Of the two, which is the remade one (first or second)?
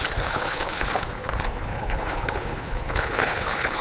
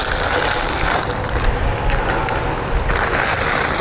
first